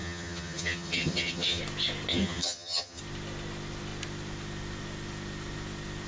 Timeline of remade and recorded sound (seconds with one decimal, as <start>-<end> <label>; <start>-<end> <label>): 0.0-1.6 remade; 1.6-2.1 recorded; 2.1-3.0 remade; 3.0-6.1 recorded